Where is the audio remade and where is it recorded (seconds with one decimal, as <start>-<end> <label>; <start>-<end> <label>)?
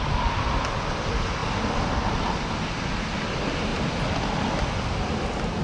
0.0-5.6 recorded